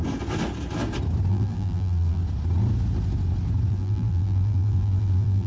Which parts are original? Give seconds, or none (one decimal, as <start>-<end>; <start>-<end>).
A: 0.0-1.3; 2.2-3.7

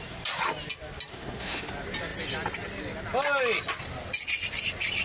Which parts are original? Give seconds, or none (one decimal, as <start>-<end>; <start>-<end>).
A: 0.0-1.1; 1.7-5.0

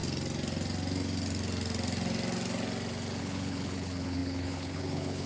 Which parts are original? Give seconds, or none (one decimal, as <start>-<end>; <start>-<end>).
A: 0.0-3.2

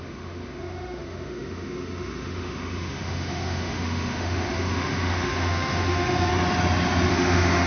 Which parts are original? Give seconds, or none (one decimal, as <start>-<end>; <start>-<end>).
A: 6.3-7.1

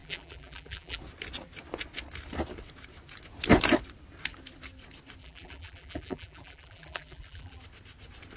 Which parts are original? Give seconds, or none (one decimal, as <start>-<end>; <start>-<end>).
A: 1.0-5.2; 7.6-8.4